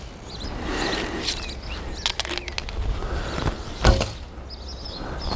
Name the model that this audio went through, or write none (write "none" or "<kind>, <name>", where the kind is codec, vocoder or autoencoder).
none